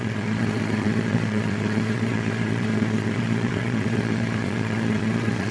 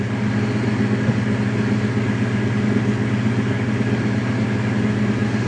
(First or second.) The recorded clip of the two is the second